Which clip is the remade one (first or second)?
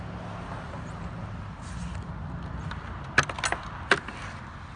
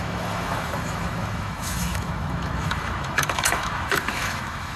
second